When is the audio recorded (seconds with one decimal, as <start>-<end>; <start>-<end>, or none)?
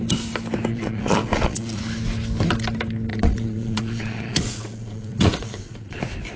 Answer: 0.0-0.7; 1.8-3.1; 6.0-6.4